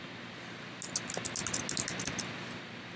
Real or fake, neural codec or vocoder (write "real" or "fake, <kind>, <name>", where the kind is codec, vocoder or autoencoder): real